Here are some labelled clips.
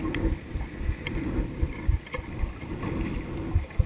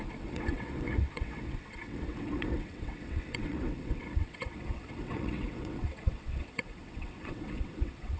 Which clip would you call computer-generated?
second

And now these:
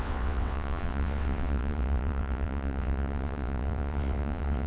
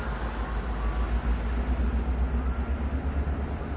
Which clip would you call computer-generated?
first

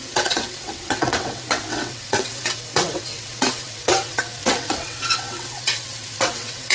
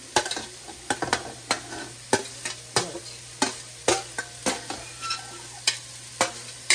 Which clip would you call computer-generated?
first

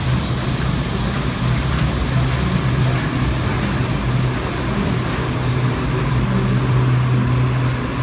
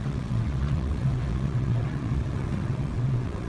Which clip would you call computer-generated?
second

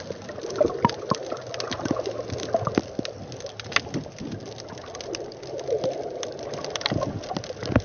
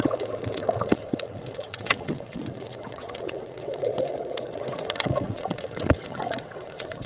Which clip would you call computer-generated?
second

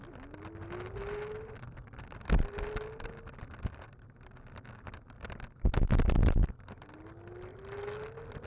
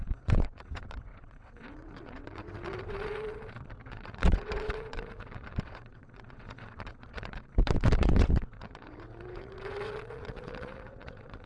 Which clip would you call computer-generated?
second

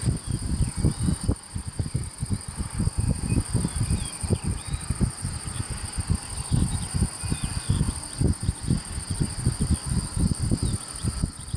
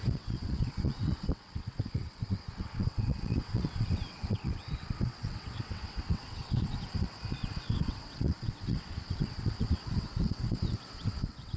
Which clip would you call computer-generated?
second